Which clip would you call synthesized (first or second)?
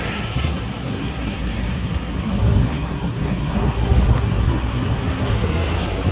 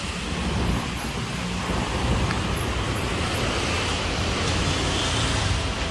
first